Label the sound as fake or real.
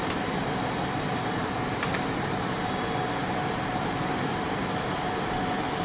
real